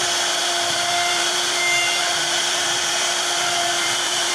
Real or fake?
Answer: fake